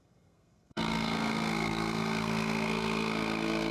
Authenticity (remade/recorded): remade